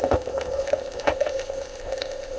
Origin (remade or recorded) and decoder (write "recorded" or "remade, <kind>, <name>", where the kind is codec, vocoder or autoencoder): remade, codec, ZipCodec